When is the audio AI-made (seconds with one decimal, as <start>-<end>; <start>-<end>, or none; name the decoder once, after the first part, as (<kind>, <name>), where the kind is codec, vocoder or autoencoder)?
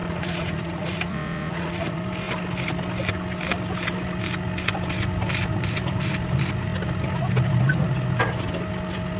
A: 0.0-2.0 (vocoder, Vocos)